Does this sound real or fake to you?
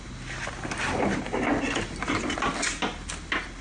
real